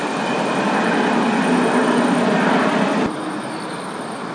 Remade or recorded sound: recorded